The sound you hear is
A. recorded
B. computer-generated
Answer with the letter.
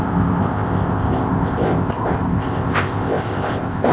B